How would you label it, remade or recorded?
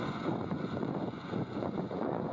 remade